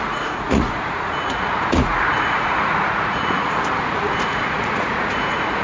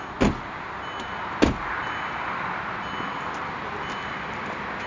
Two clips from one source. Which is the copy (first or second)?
first